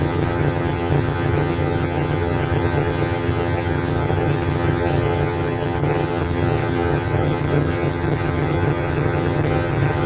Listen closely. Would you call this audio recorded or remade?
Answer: remade